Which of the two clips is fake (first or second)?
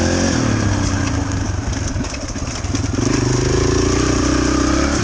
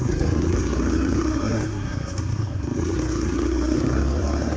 second